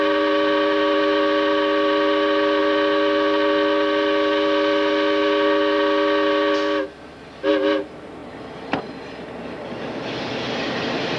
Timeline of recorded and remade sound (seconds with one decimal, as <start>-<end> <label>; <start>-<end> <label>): 0.0-11.2 recorded